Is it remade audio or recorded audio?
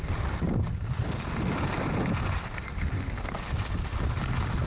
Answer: recorded